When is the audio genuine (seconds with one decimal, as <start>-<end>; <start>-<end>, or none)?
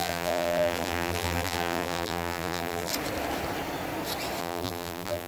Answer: 2.9-4.4